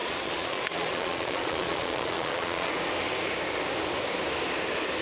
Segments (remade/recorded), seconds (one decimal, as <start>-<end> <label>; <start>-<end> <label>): 0.0-2.7 remade; 2.7-5.0 recorded